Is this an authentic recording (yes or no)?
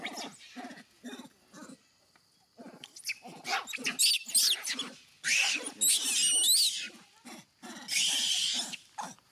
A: yes